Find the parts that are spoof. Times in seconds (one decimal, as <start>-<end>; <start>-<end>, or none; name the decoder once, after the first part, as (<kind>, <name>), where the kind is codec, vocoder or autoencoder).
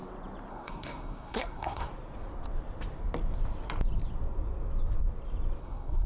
0.5-1.9 (codec, SNAC); 5.6-6.1